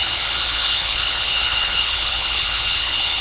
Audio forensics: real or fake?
fake